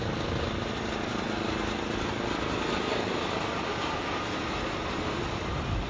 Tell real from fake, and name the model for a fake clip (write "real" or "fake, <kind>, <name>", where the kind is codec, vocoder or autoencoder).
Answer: real